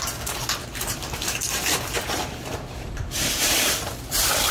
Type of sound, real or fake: fake